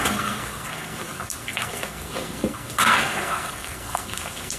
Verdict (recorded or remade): remade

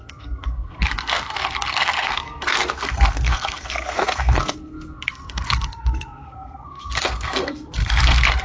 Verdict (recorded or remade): remade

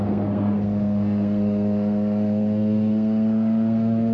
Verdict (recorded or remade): remade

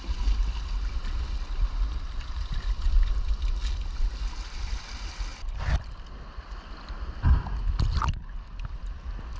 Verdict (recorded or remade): recorded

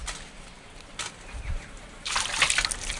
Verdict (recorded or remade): recorded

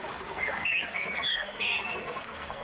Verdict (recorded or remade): remade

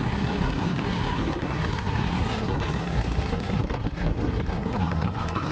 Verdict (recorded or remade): remade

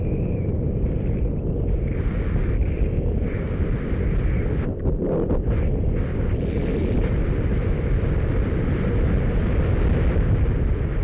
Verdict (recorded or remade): recorded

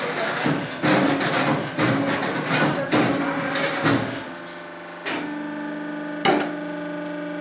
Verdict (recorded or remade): recorded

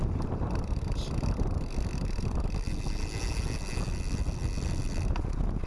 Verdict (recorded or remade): recorded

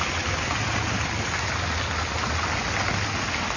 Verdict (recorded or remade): recorded